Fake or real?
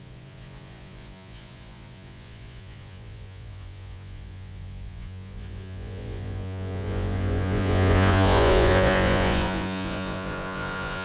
fake